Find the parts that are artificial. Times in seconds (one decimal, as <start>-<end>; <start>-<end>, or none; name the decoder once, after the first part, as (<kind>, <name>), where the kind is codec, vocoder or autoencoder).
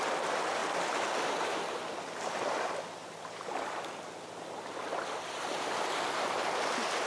none